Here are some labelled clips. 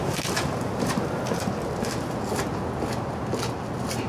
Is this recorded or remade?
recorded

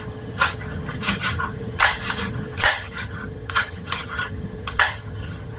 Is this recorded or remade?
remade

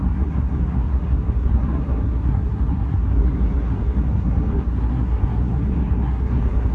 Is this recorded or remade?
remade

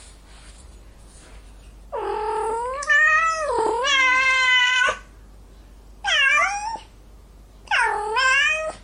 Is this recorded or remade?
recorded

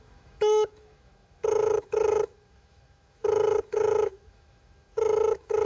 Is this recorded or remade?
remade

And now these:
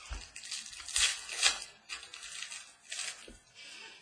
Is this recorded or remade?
recorded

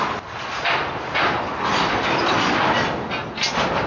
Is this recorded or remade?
recorded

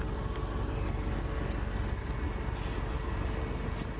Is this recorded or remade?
recorded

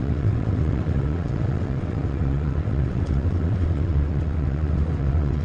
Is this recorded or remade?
remade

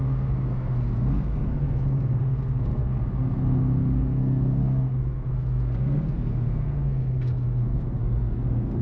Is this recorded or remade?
remade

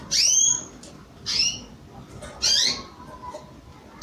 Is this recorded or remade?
recorded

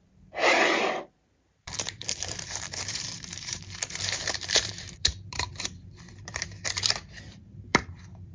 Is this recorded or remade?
remade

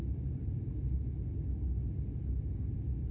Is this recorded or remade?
recorded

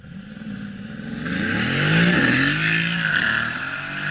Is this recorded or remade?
recorded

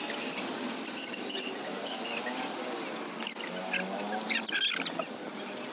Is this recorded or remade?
recorded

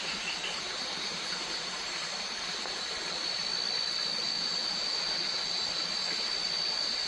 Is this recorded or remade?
recorded